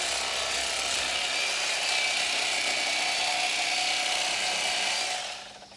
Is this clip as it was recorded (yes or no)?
yes